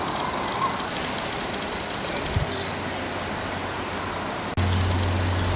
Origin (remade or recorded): recorded